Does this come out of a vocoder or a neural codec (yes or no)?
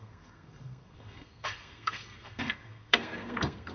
yes